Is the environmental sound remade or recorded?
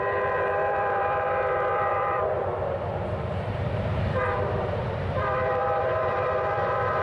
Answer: remade